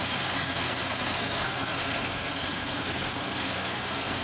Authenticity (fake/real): fake